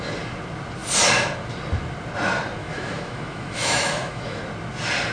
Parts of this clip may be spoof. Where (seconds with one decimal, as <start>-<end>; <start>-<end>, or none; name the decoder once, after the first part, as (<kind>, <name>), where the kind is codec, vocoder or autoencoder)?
2.6-4.4 (autoencoder, DAC-VAE)